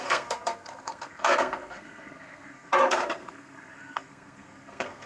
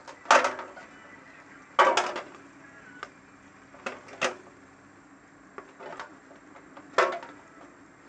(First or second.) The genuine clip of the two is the second